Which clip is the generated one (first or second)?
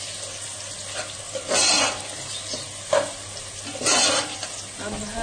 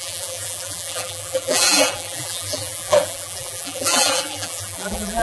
second